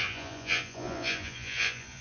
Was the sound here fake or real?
fake